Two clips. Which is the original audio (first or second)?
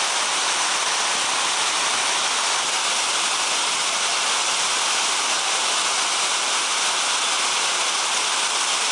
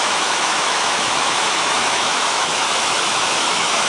first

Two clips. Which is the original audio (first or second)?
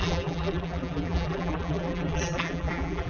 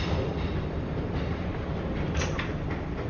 second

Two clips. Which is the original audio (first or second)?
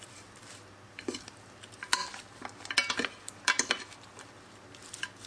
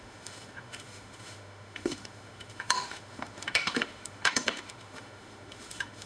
first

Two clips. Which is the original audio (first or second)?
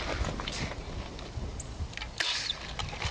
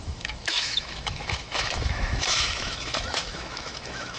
first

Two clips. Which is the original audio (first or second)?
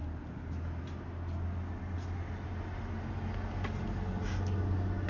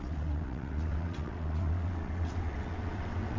first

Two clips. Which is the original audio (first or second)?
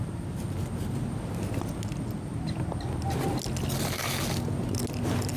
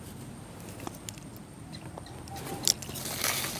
first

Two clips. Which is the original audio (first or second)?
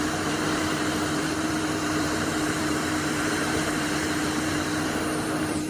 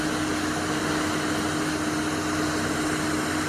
second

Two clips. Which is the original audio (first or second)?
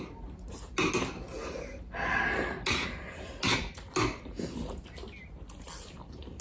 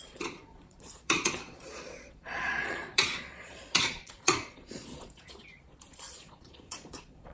first